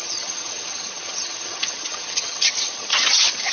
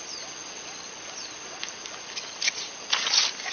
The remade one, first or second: first